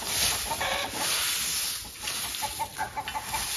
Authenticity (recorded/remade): recorded